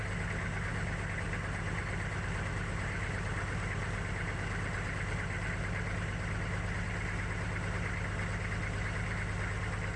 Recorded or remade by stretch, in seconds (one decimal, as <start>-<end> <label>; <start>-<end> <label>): 0.0-10.0 recorded